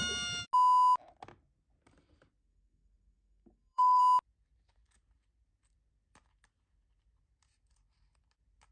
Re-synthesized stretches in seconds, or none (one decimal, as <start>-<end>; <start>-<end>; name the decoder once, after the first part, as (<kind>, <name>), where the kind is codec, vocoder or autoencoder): 2.4-4.0 (codec, SNAC)